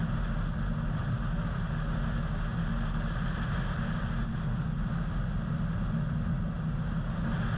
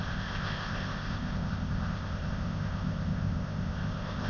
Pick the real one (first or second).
first